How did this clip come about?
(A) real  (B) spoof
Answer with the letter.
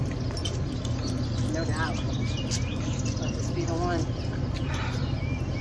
A